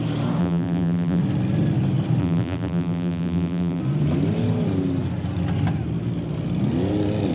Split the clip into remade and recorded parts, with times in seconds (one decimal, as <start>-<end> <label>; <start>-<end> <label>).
0.0-0.4 recorded; 0.4-1.2 remade; 1.2-2.2 recorded; 2.2-3.8 remade; 3.8-7.3 recorded